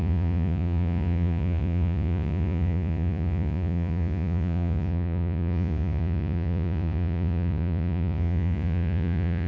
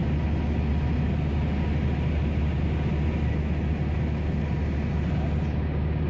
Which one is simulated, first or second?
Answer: first